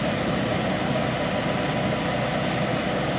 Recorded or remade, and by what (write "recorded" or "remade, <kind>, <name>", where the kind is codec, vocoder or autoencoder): recorded